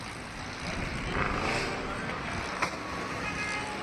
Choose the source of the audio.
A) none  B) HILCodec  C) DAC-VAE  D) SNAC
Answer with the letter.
A